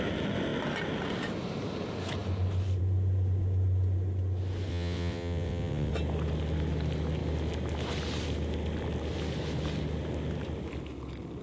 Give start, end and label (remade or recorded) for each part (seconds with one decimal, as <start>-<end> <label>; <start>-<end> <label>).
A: 0.0-4.7 recorded; 4.7-5.9 remade; 5.9-11.4 recorded